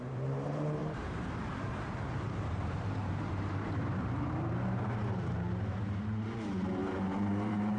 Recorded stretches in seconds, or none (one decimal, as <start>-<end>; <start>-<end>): none